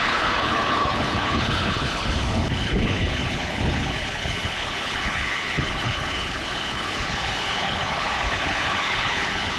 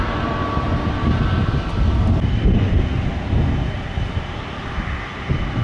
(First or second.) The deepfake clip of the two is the first